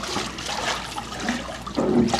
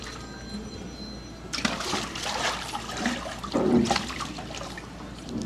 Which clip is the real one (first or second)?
first